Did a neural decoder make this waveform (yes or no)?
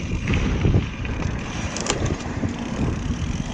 yes